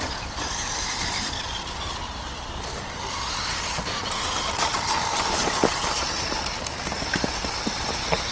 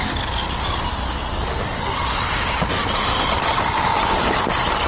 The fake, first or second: first